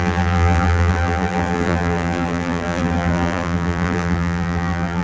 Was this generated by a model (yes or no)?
yes